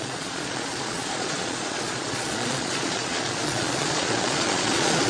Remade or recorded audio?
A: remade